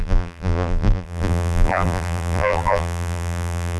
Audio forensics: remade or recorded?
remade